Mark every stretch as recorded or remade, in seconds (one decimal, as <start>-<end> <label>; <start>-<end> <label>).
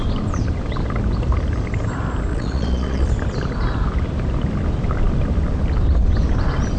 0.0-2.3 recorded; 2.3-3.1 remade; 3.1-6.8 recorded